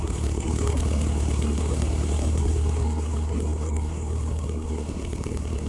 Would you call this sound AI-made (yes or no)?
yes